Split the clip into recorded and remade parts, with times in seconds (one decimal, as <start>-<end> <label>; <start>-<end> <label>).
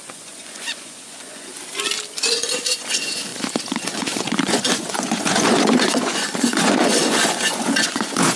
0.0-1.5 remade; 1.5-2.1 recorded; 2.1-8.4 remade